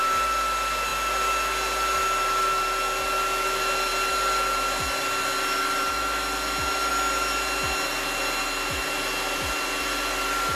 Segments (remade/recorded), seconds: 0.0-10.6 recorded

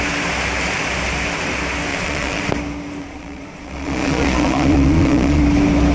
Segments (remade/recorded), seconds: 0.0-1.9 recorded; 1.9-2.4 remade; 2.4-3.0 recorded; 3.0-5.4 remade; 5.4-5.9 recorded

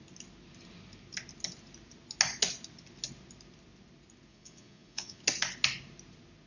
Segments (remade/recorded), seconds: 0.0-4.3 recorded; 4.3-5.2 remade; 5.2-6.5 recorded

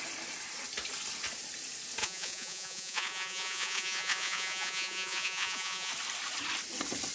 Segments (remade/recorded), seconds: 0.0-2.0 recorded; 2.0-5.9 remade; 5.9-7.1 recorded

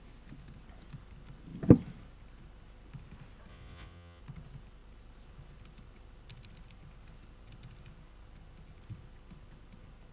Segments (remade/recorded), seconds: 0.0-3.5 recorded; 3.5-4.2 remade; 4.2-10.1 recorded

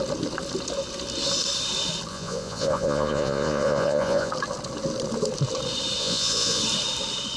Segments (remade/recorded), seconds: 0.0-2.1 recorded; 2.1-4.3 remade; 4.3-6.0 recorded; 6.0-6.6 remade; 6.6-7.4 recorded